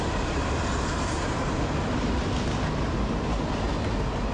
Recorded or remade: recorded